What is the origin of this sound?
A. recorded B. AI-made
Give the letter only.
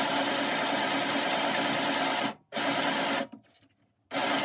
A